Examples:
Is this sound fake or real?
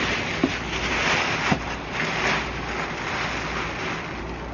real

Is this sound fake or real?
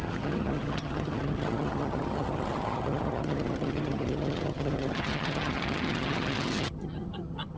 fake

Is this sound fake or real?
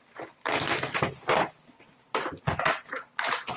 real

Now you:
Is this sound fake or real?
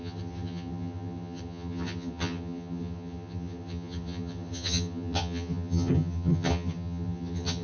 fake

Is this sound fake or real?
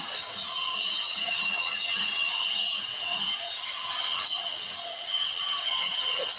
fake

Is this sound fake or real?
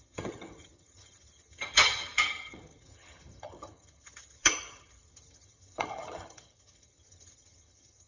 fake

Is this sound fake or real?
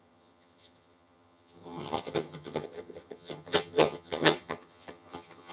fake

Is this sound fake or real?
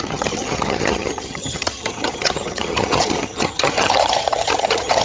fake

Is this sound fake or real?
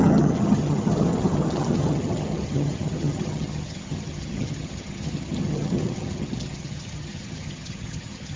fake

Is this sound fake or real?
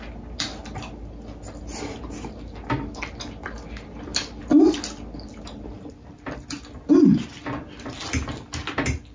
real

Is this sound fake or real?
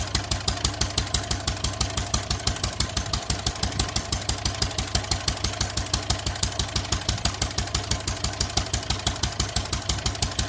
real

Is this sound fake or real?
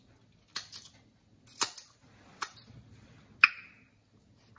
real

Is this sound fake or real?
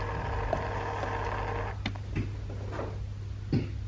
real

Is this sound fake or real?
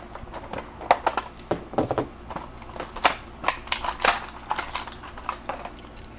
real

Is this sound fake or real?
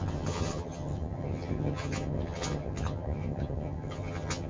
fake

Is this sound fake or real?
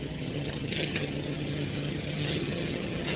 fake